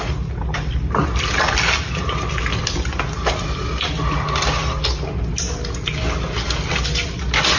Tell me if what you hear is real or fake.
real